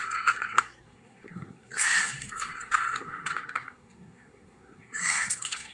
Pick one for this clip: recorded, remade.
remade